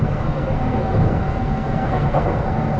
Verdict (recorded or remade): remade